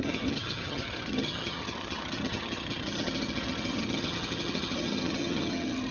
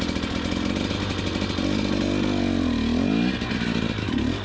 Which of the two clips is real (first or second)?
second